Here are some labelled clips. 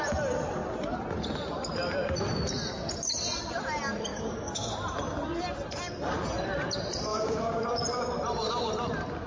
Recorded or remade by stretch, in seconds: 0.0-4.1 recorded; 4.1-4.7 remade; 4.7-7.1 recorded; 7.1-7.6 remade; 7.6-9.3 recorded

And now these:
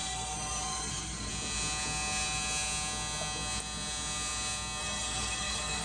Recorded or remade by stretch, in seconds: 0.0-1.3 remade; 1.3-4.8 recorded; 4.8-5.8 remade

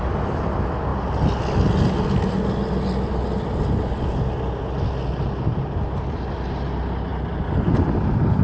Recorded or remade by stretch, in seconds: 0.0-8.4 recorded

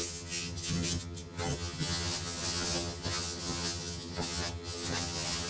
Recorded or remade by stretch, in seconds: 0.0-5.5 remade

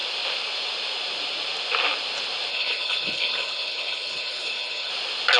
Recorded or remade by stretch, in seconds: 0.0-2.5 recorded; 2.5-4.9 remade; 4.9-5.4 recorded

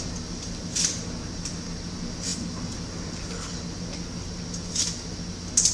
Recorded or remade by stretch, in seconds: 0.0-5.7 recorded

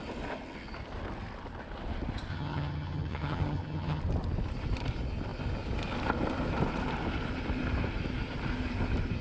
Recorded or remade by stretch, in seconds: 0.0-2.3 recorded; 2.3-4.0 remade; 4.0-9.2 recorded